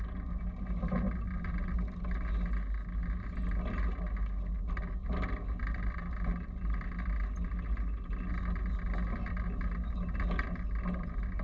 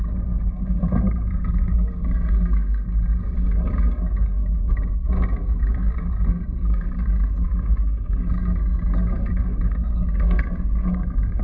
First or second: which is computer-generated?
second